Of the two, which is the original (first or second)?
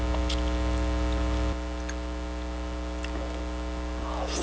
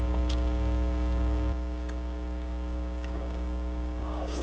first